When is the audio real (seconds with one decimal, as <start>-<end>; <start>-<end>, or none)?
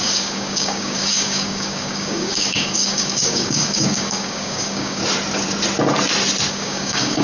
5.0-6.5